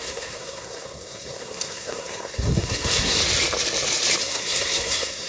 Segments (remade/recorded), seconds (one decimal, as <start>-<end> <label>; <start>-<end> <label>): 0.0-3.2 remade; 3.2-4.2 recorded; 4.2-5.3 remade